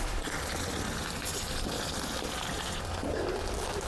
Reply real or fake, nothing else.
real